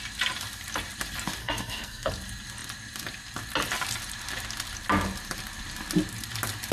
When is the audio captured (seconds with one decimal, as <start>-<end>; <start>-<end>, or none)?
0.0-1.4; 2.1-6.7